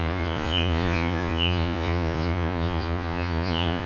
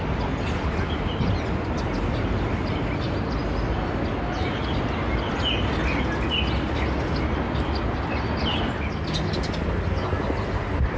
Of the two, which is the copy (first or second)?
first